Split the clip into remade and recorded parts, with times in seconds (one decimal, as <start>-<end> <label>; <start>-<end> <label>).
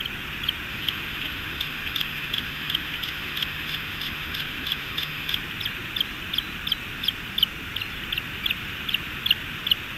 0.0-0.7 recorded; 0.7-5.4 remade; 5.4-10.0 recorded